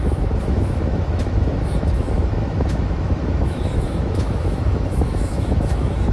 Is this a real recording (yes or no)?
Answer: no